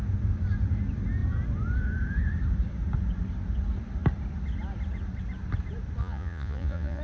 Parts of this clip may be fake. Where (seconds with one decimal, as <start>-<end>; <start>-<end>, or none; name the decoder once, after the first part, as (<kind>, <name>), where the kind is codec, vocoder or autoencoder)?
6.0-7.0 (vocoder, Vocos)